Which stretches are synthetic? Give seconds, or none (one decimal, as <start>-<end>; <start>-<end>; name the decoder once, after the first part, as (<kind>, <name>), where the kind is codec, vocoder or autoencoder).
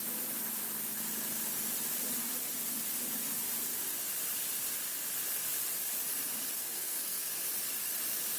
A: 6.5-7.3 (codec, SNAC)